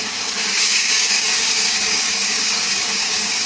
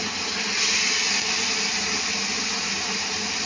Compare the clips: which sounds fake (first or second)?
first